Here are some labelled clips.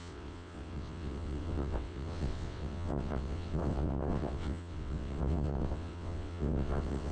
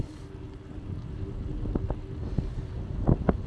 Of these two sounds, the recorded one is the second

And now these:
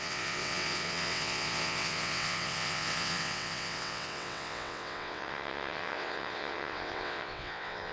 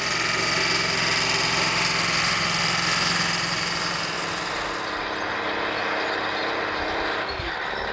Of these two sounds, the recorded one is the second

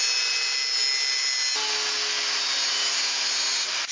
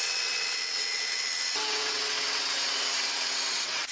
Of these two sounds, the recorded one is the first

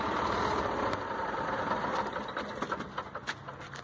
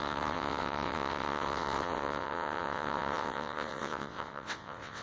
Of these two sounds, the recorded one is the first